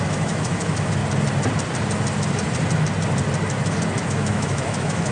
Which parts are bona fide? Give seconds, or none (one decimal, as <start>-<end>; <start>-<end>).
1.0-4.1